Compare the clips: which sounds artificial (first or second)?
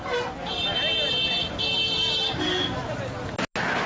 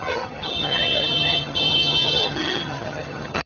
second